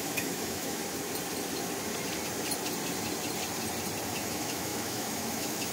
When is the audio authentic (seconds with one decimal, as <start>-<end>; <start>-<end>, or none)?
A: 0.8-4.2